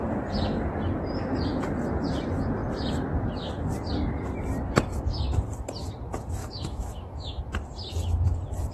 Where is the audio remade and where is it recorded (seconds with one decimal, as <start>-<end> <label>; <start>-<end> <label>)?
0.0-6.4 recorded; 6.4-7.4 remade; 7.4-8.7 recorded